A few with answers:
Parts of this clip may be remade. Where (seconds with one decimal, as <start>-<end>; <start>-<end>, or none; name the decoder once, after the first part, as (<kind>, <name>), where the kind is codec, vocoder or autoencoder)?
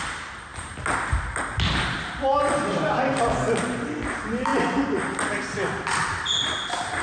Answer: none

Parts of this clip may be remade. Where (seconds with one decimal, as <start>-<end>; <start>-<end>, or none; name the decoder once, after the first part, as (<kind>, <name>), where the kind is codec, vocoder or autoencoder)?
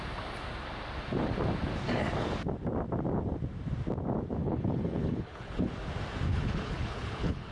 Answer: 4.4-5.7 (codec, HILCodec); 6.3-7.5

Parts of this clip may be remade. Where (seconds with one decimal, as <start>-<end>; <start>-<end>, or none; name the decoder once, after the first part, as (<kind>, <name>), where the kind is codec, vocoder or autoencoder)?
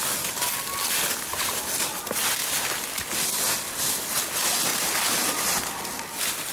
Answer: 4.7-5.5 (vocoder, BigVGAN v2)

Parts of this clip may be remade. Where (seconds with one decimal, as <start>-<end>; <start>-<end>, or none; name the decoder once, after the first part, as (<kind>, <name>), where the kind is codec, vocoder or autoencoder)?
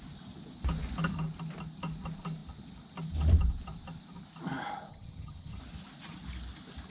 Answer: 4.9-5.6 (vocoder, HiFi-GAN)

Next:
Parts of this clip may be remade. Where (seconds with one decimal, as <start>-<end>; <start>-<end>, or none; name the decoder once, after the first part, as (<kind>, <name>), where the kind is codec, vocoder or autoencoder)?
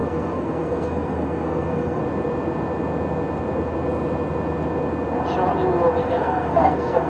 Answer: 0.0-2.0 (codec, SNAC); 6.0-7.1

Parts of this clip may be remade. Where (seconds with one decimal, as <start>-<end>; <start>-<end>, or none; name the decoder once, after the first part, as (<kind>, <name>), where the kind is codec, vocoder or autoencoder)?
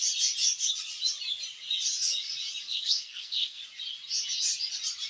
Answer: 2.7-3.6 (codec, SNAC)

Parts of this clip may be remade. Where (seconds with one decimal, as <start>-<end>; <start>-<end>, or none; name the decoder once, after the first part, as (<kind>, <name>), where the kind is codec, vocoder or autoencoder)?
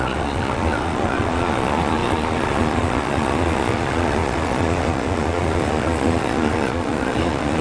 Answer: 0.0-7.6 (vocoder, Vocos)